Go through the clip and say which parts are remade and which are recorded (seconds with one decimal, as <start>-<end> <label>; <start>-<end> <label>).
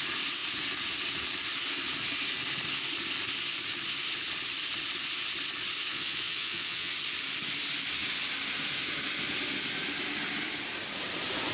0.0-5.9 recorded; 5.9-6.9 remade; 6.9-11.5 recorded